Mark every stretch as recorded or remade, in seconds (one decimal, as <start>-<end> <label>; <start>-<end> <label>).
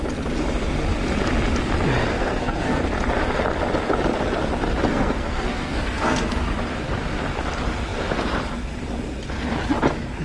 0.0-2.1 recorded; 2.1-2.8 remade; 2.8-4.9 recorded; 4.9-6.4 remade; 6.4-10.2 recorded